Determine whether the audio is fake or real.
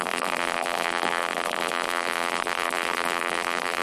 fake